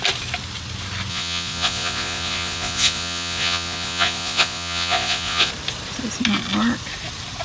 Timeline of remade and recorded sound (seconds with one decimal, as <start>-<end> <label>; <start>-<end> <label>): 0.0-1.1 recorded; 1.1-5.5 remade; 5.5-7.4 recorded